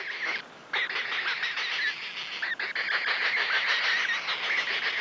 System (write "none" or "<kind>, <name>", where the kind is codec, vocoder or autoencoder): none